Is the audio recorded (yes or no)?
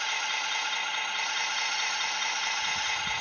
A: no